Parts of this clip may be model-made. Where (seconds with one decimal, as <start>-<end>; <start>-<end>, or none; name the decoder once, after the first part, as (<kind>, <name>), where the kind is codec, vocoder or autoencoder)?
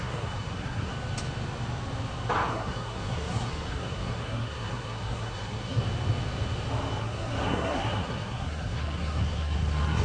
0.0-0.9 (codec, SNAC); 2.5-5.8; 7.0-10.0